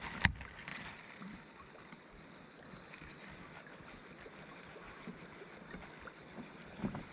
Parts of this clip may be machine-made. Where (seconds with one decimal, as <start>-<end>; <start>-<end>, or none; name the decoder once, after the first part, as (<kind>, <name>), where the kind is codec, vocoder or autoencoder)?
0.0-4.5 (vocoder, BigVGAN v2); 5.8-7.1